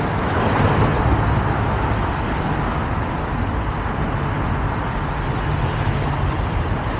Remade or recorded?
recorded